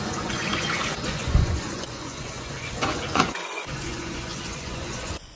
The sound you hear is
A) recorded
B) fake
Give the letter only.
B